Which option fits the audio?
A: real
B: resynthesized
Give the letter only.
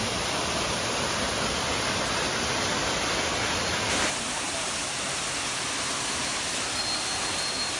A